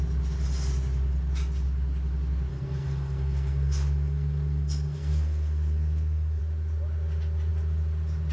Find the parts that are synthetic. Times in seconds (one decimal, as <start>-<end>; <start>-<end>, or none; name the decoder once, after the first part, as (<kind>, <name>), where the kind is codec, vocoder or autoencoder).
2.5-6.4 (codec, SNAC)